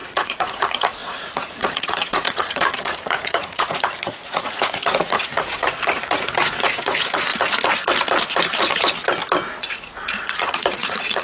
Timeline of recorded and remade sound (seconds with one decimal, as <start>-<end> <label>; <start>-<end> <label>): 0.0-7.3 remade; 7.3-9.6 recorded; 9.6-11.2 remade